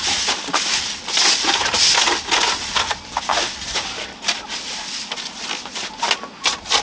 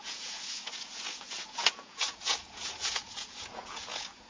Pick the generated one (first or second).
second